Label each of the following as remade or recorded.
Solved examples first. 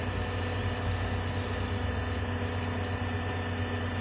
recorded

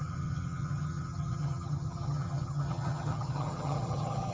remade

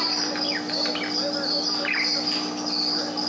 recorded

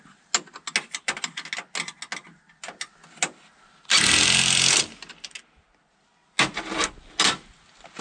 recorded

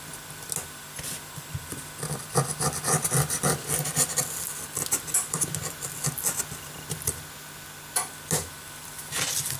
recorded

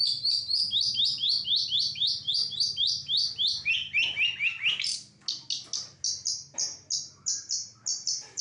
recorded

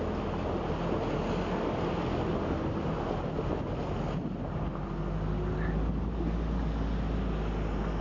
recorded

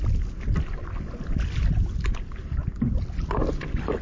recorded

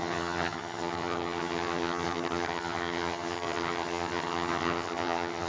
remade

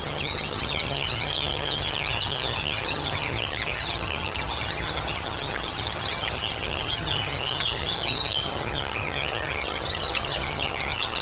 remade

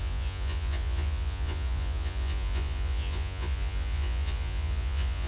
remade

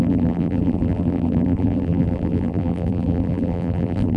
remade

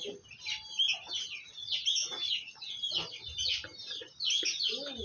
recorded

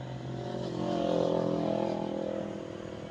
recorded